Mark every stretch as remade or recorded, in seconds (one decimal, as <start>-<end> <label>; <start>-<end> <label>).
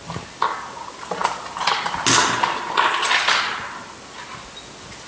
0.0-5.1 recorded